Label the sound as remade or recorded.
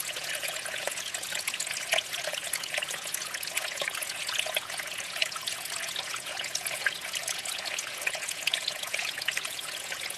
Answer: remade